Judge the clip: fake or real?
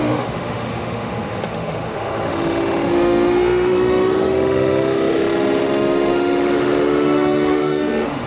fake